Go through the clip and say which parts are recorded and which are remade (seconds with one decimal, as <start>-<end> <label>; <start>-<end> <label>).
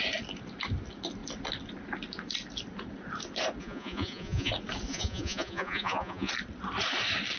0.0-3.6 recorded; 3.6-4.5 remade; 4.5-4.9 recorded; 4.9-6.3 remade; 6.3-7.4 recorded